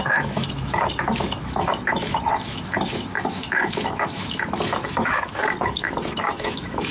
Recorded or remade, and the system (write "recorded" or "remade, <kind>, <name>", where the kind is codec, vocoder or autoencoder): remade, autoencoder, DAC-VAE